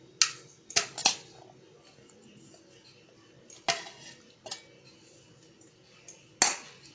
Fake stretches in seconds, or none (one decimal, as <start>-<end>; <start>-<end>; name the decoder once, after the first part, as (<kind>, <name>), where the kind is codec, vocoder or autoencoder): none